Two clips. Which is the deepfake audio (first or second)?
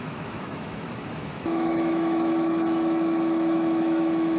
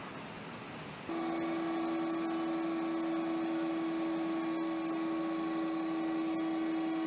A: first